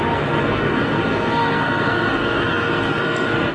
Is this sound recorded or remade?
remade